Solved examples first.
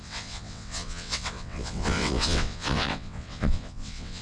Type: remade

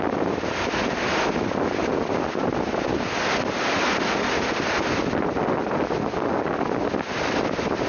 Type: recorded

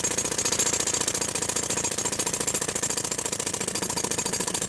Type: recorded